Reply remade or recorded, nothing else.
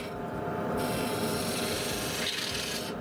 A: recorded